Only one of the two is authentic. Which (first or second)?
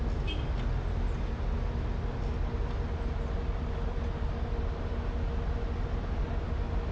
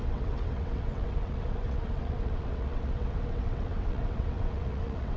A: first